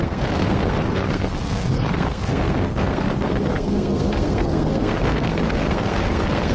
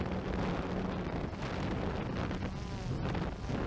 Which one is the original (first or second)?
second